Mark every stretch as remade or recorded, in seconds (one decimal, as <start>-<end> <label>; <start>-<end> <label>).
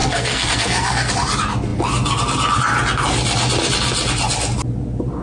0.0-1.1 remade; 1.1-5.2 recorded